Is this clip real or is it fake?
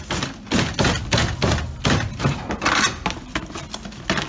real